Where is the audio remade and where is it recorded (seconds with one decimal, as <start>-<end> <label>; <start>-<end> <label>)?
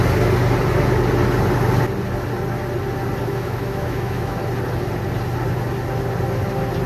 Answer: 0.0-3.3 recorded; 3.3-4.4 remade; 4.4-6.9 recorded